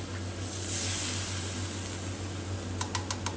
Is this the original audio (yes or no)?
yes